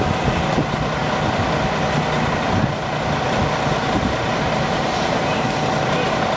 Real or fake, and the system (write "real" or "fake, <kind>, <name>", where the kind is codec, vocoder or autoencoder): real